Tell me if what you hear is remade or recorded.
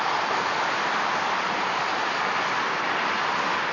recorded